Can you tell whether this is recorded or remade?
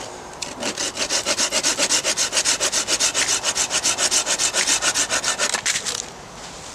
recorded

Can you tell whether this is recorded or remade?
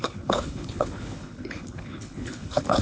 remade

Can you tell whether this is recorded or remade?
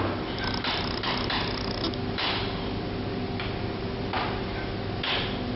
recorded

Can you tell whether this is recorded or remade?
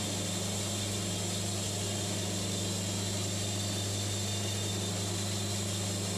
recorded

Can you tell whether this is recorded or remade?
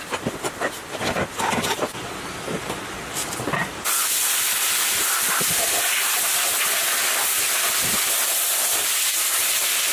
remade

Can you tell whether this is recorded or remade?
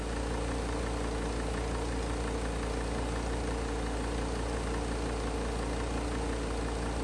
recorded